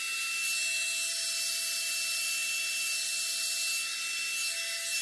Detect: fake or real real